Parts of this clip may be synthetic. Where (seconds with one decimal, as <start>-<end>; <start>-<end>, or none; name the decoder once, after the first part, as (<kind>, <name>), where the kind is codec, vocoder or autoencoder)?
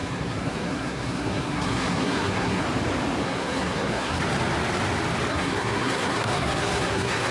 0.0-2.6 (codec, SNAC); 3.2-4.2; 5.3-7.3